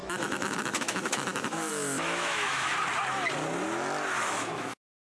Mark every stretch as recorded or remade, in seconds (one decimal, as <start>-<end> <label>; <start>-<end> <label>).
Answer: 0.0-2.7 remade; 2.7-4.2 recorded; 4.2-5.2 remade